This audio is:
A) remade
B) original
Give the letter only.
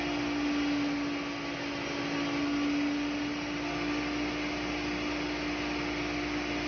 B